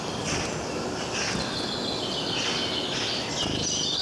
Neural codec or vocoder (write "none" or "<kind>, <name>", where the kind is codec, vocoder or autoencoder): none